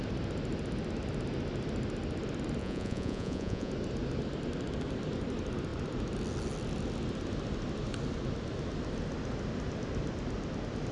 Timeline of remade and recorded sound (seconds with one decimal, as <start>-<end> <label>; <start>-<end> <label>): 0.0-2.6 recorded; 2.6-3.7 remade; 3.7-10.9 recorded

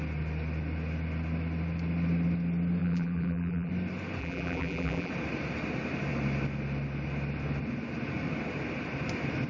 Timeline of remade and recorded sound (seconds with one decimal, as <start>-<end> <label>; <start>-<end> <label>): 0.0-2.8 recorded; 2.8-3.7 remade; 3.7-4.2 recorded; 4.2-5.1 remade; 5.1-9.5 recorded

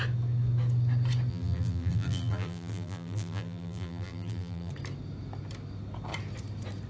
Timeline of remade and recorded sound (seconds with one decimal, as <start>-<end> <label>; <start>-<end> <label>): 0.0-1.3 recorded; 1.3-4.7 remade; 4.7-6.9 recorded

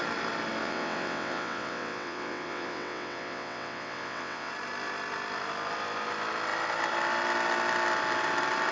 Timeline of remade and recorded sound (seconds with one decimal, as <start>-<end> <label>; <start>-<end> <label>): 0.0-0.6 recorded; 0.6-4.5 remade; 4.5-8.7 recorded